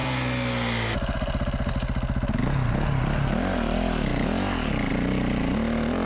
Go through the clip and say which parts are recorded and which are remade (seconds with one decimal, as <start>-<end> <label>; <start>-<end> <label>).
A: 0.0-6.1 recorded